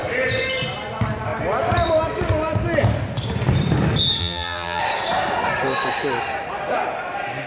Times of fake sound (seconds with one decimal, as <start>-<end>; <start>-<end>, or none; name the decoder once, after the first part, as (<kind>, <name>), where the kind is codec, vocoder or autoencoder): 4.2-4.8 (vocoder, BigVGAN v2)